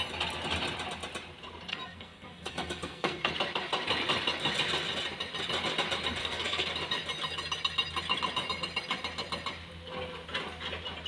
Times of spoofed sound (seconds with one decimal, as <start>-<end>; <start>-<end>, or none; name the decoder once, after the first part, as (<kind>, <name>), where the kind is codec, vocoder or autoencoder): 1.7-3.3 (codec, SNAC); 6.2-6.7